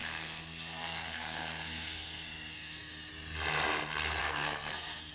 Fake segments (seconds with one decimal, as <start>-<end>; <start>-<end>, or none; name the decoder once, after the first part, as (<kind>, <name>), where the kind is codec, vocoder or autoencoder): 0.0-3.1 (codec, SNAC); 4.2-5.1